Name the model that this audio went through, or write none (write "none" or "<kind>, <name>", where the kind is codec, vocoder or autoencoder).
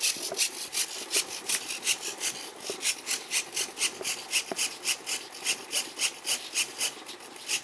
none